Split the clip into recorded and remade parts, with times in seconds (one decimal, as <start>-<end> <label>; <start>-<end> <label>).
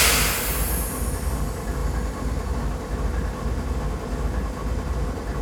0.0-5.4 recorded